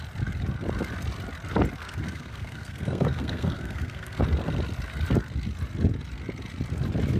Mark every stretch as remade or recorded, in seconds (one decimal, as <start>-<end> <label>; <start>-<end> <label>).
0.0-1.8 recorded; 1.8-4.2 remade; 4.2-7.2 recorded